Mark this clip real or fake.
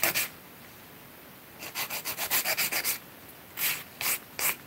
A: fake